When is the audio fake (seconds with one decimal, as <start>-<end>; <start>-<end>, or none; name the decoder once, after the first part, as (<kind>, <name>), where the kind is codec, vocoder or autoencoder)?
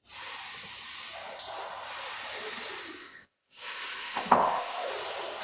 3.0-4.9 (codec, ZipCodec)